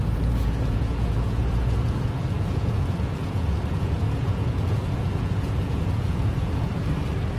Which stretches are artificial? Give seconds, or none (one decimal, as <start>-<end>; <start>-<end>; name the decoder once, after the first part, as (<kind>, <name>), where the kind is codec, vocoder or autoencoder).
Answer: 0.0-6.7 (vocoder, Vocos)